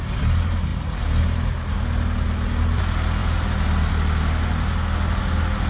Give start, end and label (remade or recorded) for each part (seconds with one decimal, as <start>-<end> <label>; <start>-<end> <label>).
0.0-5.7 recorded